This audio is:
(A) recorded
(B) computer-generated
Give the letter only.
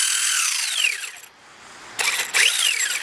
A